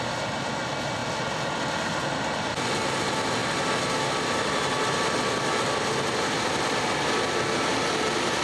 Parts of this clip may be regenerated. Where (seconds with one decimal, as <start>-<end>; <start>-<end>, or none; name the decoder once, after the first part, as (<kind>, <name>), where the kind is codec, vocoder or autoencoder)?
none